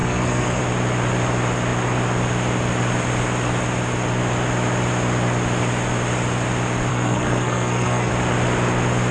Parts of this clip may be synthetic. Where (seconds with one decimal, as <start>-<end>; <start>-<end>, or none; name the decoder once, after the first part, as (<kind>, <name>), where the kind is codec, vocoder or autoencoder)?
0.0-0.6 (codec, SNAC); 6.9-8.1